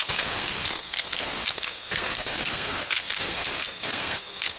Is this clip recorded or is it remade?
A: remade